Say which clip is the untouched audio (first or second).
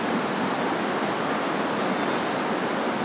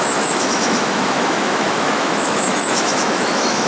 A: first